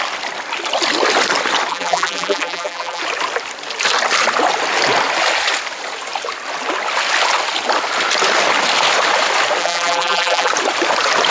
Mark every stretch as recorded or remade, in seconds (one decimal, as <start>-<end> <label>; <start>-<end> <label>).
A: 0.0-1.7 recorded; 1.7-3.0 remade; 3.0-9.6 recorded; 9.6-10.5 remade; 10.5-11.3 recorded